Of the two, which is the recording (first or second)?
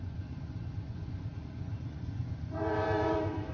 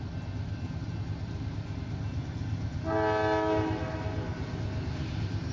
second